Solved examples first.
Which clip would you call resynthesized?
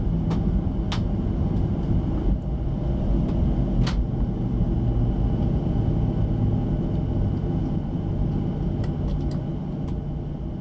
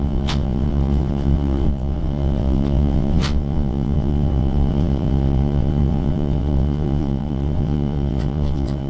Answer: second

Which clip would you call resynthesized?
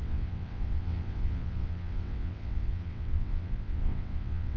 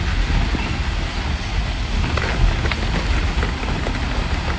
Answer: first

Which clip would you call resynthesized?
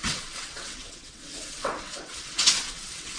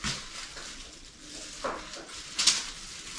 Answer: first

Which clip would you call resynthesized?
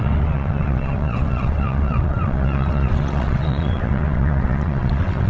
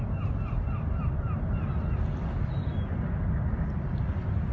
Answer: first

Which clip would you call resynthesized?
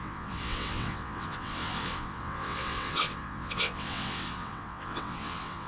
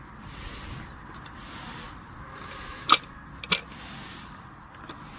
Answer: first